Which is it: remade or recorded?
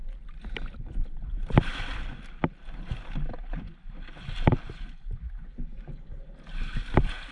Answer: recorded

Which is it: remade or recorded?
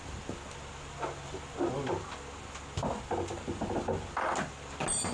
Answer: recorded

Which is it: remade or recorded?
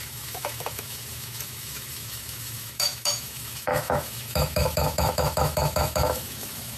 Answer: remade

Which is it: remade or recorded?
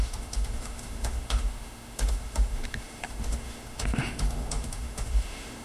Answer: remade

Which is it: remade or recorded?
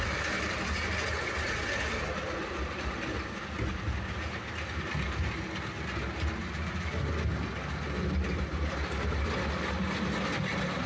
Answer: recorded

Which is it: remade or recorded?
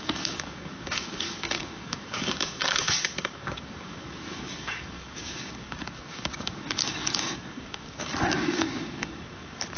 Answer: remade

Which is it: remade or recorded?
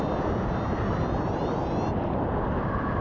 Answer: recorded